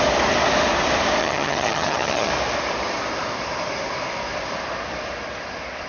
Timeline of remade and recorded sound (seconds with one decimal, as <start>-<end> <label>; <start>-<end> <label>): 0.0-1.2 recorded; 1.2-2.3 remade; 2.3-5.9 recorded